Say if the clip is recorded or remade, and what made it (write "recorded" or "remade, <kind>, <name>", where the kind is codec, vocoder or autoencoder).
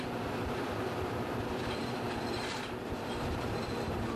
remade, vocoder, BigVGAN v2